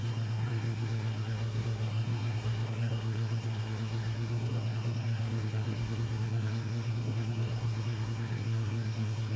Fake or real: fake